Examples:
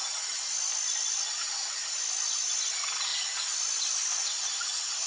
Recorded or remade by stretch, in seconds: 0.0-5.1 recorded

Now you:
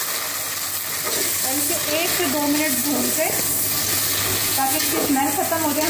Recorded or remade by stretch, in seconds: 0.0-4.4 recorded; 4.4-5.2 remade; 5.2-5.9 recorded

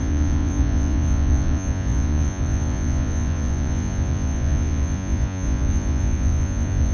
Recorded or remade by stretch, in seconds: 0.0-6.9 remade

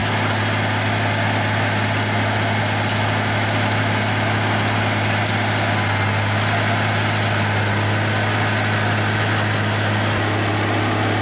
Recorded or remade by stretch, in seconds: 0.0-11.2 recorded

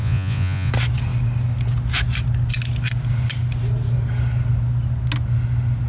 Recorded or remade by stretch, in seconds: 0.0-0.7 remade; 0.7-5.9 recorded

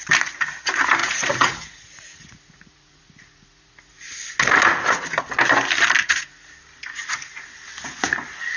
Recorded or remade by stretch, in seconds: 0.0-1.0 recorded; 1.0-4.1 remade; 4.1-6.0 recorded; 6.0-6.5 remade; 6.5-8.6 recorded

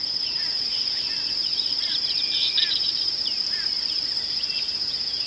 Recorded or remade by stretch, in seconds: 0.0-1.4 remade; 1.4-4.6 recorded; 4.6-5.3 remade